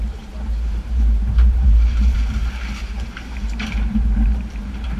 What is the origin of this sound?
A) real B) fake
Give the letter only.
B